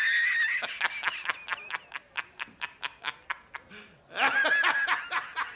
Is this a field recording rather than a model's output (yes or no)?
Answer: yes